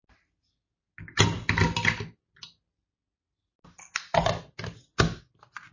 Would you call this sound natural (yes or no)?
yes